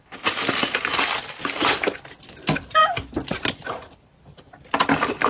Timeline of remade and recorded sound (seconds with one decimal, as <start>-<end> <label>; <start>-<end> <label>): 0.0-5.3 recorded